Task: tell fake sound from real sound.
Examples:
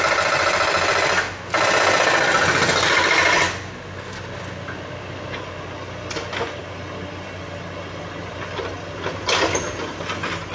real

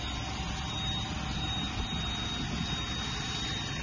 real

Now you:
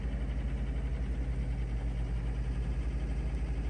real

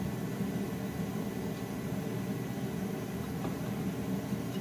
real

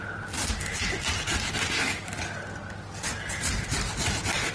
real